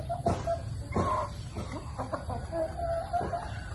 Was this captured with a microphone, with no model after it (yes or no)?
yes